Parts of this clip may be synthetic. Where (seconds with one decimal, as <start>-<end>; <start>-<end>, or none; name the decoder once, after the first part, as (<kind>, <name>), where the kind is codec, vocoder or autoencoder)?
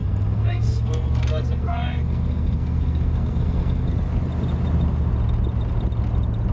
0.0-3.9 (codec, SNAC)